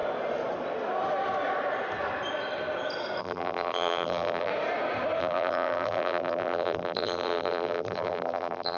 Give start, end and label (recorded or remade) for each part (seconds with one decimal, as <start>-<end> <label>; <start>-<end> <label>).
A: 0.0-3.2 recorded; 3.2-4.5 remade; 4.5-5.2 recorded; 5.2-8.8 remade